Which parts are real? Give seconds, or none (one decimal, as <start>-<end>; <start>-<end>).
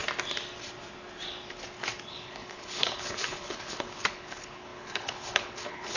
0.0-2.1